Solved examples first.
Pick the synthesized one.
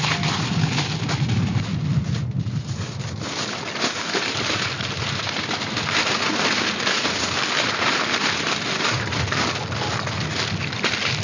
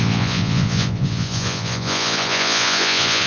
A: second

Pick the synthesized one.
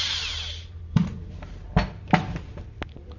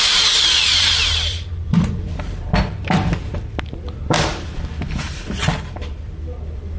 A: second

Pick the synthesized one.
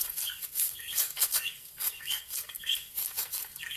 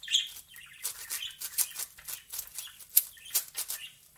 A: first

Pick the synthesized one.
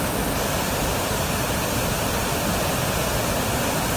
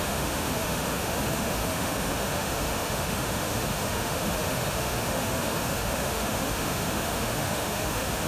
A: second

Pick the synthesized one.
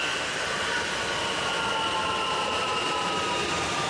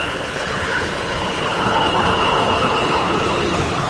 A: second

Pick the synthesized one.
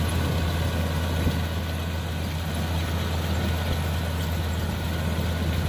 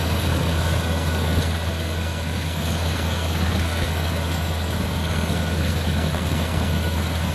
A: second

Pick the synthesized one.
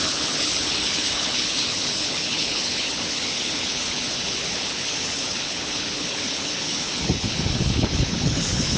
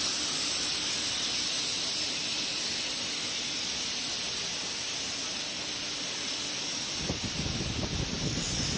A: first